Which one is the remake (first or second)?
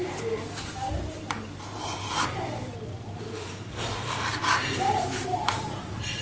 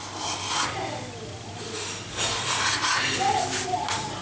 first